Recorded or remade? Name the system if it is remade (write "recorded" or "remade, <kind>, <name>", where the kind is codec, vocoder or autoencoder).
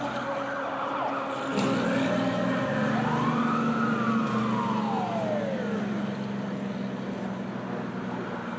recorded